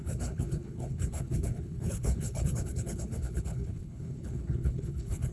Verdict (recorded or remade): remade